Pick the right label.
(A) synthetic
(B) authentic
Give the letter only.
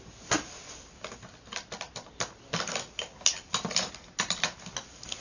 B